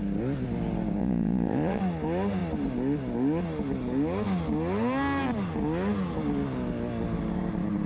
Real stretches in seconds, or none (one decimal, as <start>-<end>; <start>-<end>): 0.0-1.0; 1.8-7.9